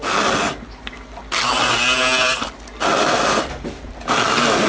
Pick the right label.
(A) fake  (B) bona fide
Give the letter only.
B